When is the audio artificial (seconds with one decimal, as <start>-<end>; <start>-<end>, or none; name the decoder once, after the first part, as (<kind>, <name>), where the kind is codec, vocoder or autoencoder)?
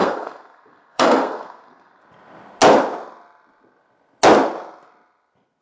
0.0-2.0 (codec, SNAC)